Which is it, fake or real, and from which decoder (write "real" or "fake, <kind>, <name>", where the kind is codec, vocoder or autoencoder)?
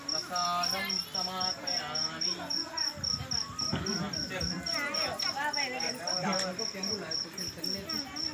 real